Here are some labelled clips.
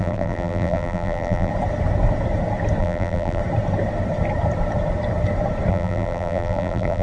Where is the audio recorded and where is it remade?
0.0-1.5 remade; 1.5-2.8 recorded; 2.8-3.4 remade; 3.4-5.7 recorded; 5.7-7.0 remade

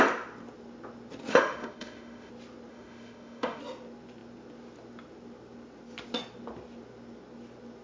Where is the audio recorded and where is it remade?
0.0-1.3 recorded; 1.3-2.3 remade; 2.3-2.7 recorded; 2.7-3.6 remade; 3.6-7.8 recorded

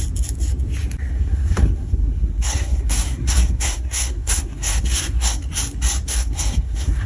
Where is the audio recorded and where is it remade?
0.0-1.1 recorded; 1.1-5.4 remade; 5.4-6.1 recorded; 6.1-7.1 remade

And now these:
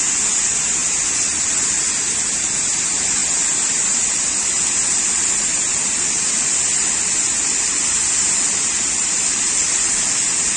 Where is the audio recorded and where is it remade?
0.0-10.6 recorded

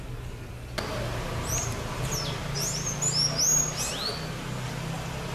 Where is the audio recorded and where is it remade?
0.0-5.3 recorded

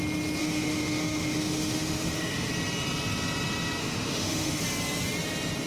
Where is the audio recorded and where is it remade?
0.0-0.4 recorded; 0.4-2.5 remade; 2.5-3.8 recorded; 3.8-4.6 remade; 4.6-5.7 recorded

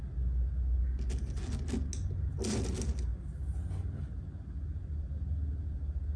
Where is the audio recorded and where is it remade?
0.0-6.2 recorded